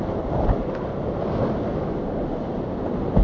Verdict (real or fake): real